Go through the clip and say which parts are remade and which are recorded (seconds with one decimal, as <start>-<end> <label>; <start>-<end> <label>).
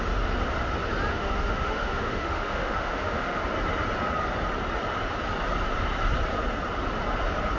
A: 0.0-1.1 recorded; 1.1-3.4 remade; 3.4-7.6 recorded